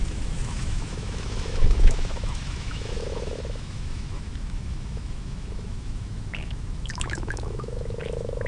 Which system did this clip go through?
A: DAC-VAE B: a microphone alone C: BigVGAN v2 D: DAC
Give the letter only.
A